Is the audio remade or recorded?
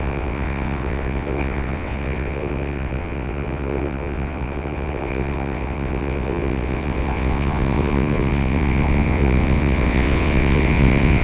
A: remade